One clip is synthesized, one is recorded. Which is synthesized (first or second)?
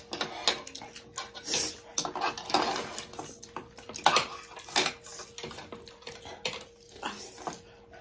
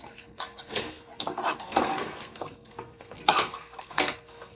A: second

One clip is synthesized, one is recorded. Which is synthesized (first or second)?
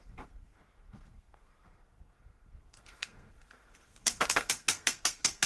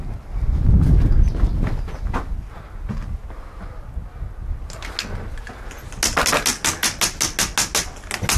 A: first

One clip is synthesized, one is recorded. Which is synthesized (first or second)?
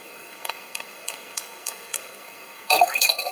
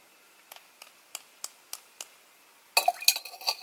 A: first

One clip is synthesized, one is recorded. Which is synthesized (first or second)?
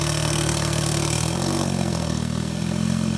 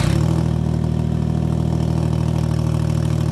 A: first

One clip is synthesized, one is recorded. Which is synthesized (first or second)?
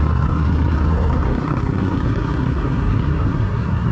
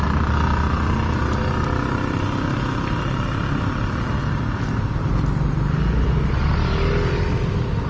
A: first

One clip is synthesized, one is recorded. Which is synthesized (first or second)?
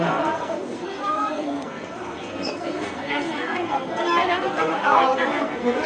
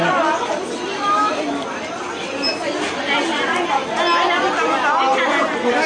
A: first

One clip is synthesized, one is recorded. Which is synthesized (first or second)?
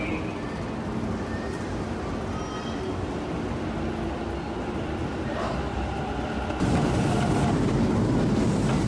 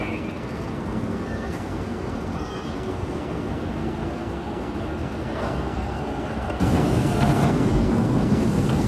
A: second